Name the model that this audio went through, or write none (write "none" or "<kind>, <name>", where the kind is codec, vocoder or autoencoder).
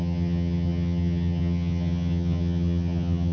vocoder, HiFi-GAN